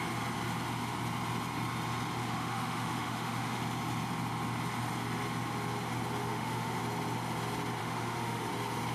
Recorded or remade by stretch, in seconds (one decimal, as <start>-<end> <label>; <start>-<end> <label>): 0.0-2.2 recorded; 2.2-3.6 remade; 3.6-6.2 recorded; 6.2-6.8 remade; 6.8-7.8 recorded; 7.8-8.5 remade; 8.5-8.9 recorded